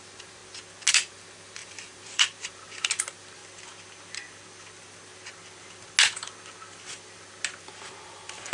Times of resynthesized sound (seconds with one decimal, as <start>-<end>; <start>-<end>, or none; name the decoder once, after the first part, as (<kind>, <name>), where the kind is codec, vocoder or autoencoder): 0.0-0.4 (vocoder, BigVGAN v2); 0.9-3.4; 7.6-8.5